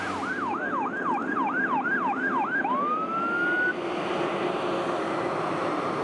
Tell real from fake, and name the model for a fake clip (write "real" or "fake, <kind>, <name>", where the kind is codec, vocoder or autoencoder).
real